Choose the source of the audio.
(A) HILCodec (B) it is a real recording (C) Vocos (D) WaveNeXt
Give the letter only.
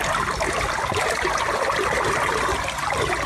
B